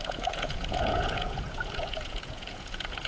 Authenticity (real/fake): fake